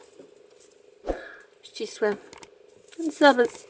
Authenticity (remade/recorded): recorded